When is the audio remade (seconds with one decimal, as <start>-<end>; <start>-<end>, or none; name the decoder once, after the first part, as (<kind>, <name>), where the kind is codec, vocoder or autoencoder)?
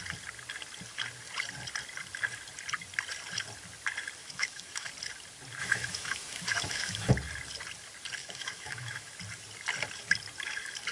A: 4.2-4.9 (autoencoder, DAC-VAE); 5.6-7.1; 8.2-9.1